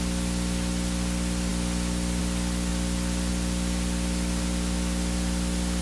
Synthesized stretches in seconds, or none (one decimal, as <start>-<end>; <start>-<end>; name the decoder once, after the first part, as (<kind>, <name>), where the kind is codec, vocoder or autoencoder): none